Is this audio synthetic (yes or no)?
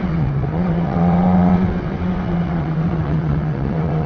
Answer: yes